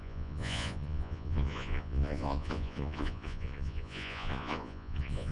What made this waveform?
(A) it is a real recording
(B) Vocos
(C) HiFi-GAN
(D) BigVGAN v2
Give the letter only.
B